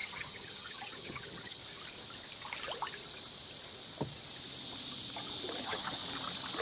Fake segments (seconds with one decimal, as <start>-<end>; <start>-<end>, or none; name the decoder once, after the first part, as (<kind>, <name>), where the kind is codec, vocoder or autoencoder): 0.0-1.6 (vocoder, HiFi-GAN); 5.6-6.0